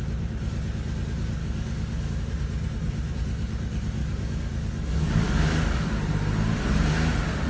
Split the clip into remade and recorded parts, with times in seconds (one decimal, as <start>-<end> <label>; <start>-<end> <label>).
0.0-1.4 recorded; 1.4-2.2 remade; 2.2-4.0 recorded; 4.0-5.9 remade; 5.9-7.5 recorded